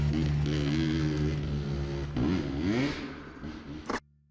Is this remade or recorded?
recorded